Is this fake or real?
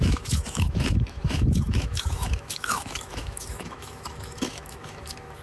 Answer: fake